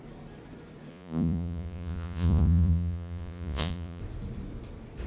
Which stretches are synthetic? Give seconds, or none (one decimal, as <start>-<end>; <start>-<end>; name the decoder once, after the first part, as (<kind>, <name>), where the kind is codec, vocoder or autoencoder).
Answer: 0.9-4.0 (vocoder, Vocos)